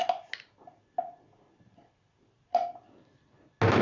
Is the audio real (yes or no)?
yes